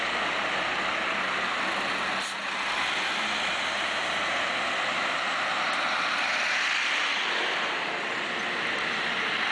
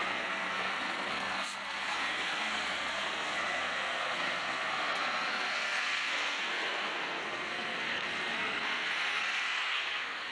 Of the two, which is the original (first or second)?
first